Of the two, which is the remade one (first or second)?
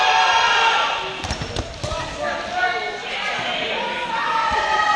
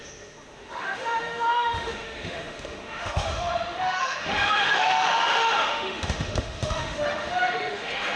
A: second